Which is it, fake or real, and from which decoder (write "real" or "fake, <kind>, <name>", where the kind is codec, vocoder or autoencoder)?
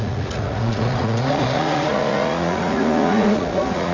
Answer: fake, vocoder, Vocos